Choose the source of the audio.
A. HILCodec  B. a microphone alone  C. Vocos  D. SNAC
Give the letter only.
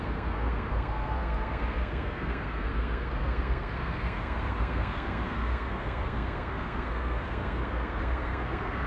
D